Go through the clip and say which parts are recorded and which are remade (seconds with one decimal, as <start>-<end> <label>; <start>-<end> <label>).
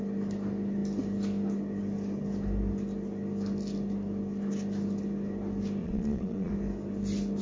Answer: 0.0-5.8 recorded; 5.8-6.5 remade; 6.5-7.4 recorded